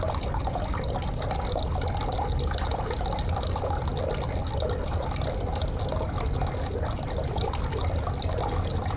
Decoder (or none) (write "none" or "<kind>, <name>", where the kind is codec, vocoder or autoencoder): none